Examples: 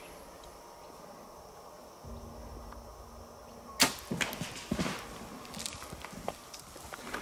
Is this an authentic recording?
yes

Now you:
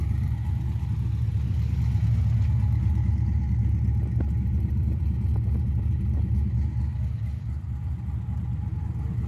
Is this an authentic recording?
yes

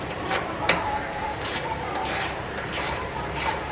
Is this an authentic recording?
no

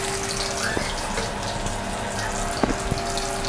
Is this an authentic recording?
yes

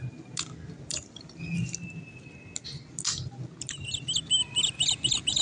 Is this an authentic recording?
yes